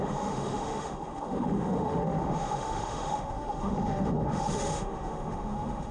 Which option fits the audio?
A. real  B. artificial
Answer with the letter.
B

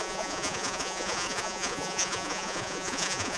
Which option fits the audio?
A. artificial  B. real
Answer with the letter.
A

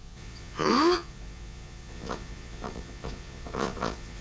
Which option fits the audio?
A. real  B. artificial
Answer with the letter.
B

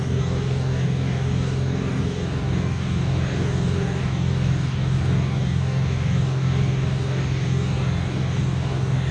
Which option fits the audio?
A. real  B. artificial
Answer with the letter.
B